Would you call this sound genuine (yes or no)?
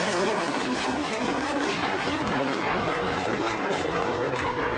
no